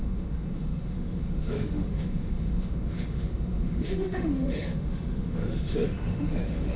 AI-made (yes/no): yes